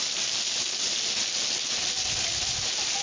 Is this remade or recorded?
recorded